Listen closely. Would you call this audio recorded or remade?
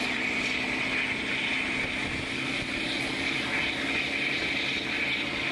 recorded